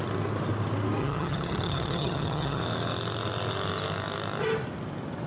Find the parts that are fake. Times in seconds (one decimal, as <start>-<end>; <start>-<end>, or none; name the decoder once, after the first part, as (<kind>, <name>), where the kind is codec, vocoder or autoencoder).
1.0-2.6 (vocoder, HiFi-GAN)